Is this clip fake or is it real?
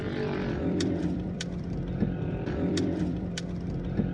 fake